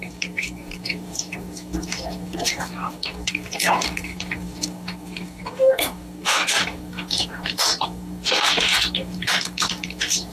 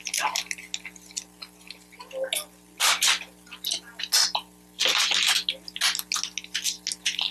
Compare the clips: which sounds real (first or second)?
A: second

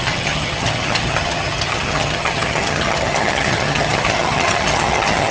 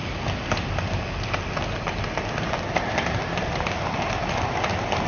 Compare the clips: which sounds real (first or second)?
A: second